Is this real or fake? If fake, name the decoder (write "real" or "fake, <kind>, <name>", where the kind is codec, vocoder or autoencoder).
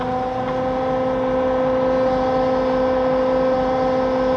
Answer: real